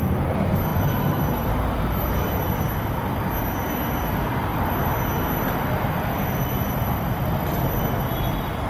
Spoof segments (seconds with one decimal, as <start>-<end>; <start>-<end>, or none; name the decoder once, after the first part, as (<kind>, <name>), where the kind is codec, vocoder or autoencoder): 0.7-1.5 (vocoder, BigVGAN v2); 4.5-7.8